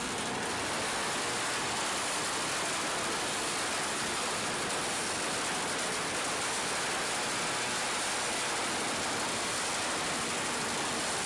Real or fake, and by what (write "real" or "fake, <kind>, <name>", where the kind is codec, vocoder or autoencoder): real